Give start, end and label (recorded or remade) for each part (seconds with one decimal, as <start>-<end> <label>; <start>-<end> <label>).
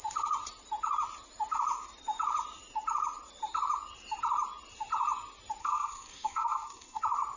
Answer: 0.0-5.6 recorded; 5.6-7.0 remade; 7.0-7.4 recorded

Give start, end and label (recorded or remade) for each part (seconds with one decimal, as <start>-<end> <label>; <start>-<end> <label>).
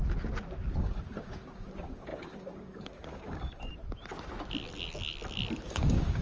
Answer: 0.0-0.8 recorded; 0.8-3.7 remade; 3.7-5.7 recorded; 5.7-6.2 remade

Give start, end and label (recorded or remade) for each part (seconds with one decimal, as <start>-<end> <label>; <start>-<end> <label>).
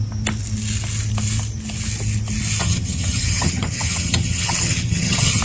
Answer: 0.0-2.6 recorded; 2.6-5.4 remade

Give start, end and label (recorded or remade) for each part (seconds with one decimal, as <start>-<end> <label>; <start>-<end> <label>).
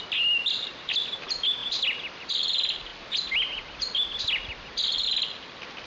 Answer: 0.0-5.9 recorded